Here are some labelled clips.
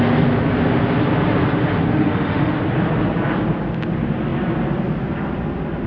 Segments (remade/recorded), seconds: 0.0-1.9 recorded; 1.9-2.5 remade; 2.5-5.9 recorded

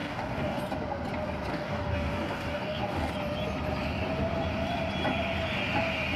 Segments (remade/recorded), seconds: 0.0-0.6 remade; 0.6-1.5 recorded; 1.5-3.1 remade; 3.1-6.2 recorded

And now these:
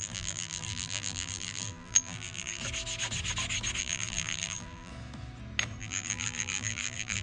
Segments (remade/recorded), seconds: 0.0-2.6 remade; 2.6-3.8 recorded; 3.8-4.9 remade; 4.9-5.8 recorded; 5.8-7.2 remade

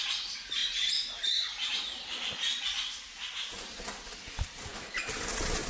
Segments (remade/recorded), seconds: 0.0-5.7 recorded

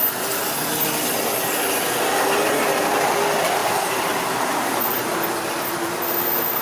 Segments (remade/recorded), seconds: 0.0-3.6 recorded; 3.6-4.8 remade; 4.8-6.6 recorded

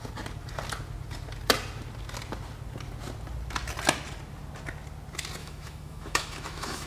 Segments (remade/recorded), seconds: 0.0-5.4 recorded; 5.4-6.9 remade

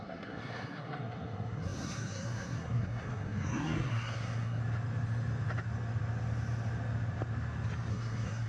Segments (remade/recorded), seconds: 0.0-4.6 remade; 4.6-7.9 recorded; 7.9-8.5 remade

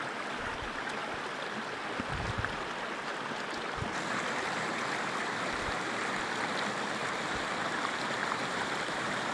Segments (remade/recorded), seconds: 0.0-7.0 recorded; 7.0-7.5 remade; 7.5-8.2 recorded; 8.2-9.3 remade